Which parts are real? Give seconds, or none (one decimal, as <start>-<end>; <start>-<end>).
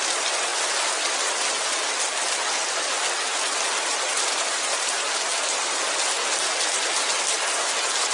0.0-8.1